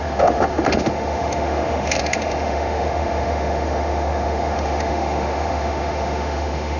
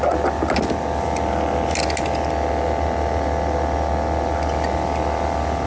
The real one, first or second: second